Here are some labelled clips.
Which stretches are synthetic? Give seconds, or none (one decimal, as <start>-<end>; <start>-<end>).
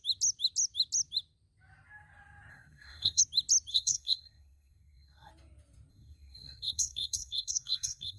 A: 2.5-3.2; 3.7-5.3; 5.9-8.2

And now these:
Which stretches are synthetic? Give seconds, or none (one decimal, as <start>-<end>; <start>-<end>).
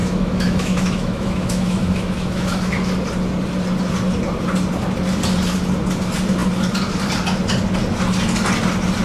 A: 0.0-2.9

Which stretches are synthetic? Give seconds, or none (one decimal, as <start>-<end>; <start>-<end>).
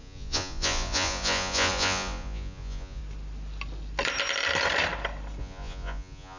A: 0.0-3.0; 5.4-6.4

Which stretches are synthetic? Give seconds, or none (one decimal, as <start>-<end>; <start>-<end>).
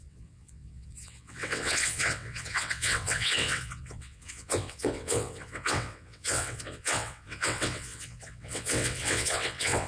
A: 0.0-9.9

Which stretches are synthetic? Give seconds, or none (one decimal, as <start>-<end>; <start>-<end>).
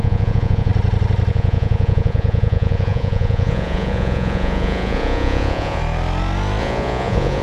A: 0.0-0.7; 1.3-5.8; 6.6-7.4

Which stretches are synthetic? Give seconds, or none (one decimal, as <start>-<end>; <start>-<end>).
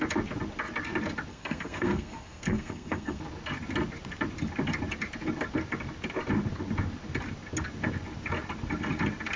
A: 1.3-3.2